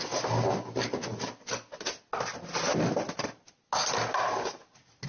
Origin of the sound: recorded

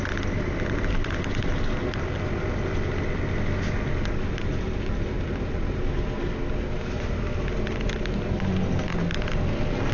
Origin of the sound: recorded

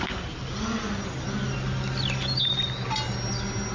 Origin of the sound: recorded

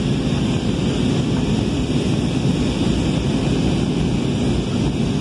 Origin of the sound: recorded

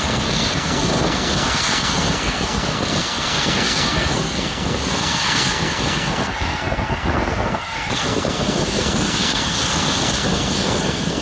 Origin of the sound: remade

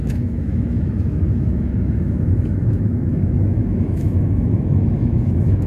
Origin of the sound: remade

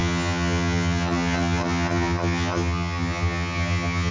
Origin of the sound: remade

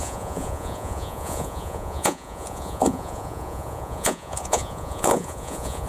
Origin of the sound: remade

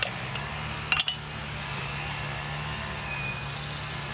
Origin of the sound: recorded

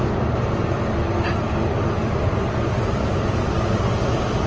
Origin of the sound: recorded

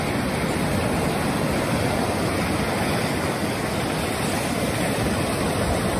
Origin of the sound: recorded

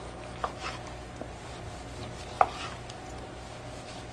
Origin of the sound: recorded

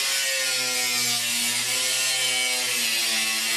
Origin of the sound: recorded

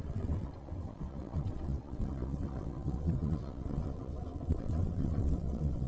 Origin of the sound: remade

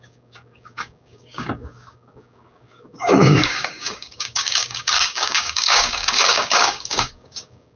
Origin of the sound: remade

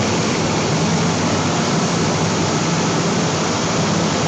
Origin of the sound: recorded